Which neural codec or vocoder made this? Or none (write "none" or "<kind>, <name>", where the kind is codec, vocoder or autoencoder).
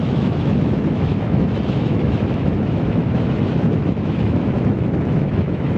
autoencoder, DAC-VAE